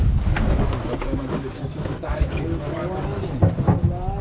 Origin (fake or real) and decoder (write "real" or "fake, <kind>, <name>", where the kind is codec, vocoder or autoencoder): real